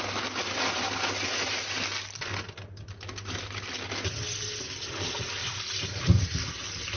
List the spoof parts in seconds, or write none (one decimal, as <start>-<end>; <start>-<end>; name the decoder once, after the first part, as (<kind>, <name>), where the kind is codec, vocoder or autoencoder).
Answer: none